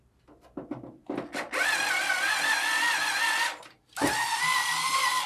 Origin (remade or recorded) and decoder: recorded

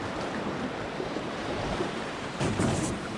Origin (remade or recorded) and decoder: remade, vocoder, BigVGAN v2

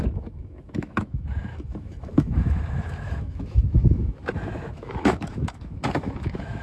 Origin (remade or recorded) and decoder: remade, autoencoder, DAC-VAE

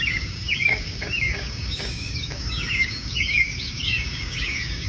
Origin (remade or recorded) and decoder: remade, codec, DAC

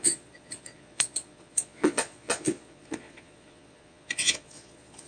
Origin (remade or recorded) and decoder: remade, vocoder, Vocos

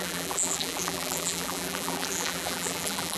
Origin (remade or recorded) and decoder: remade, vocoder, BigVGAN v2